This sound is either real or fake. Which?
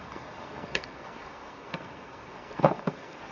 fake